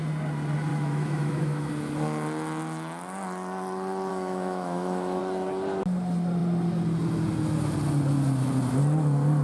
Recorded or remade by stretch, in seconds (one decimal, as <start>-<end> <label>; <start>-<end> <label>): 0.0-0.7 recorded; 0.7-1.7 remade; 1.7-4.1 recorded; 4.1-5.2 remade; 5.2-9.4 recorded